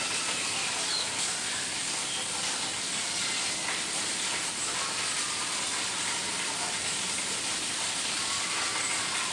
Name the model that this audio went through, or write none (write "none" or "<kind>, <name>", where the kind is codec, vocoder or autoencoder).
none